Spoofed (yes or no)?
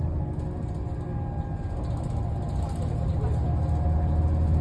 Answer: no